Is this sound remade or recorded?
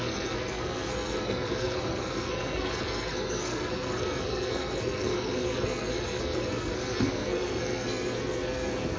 remade